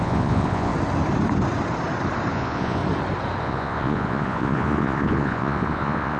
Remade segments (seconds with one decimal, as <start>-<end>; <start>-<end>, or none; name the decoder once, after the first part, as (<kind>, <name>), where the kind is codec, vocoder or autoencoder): 0.0-0.7 (vocoder, Vocos); 2.3-2.8; 3.4-6.2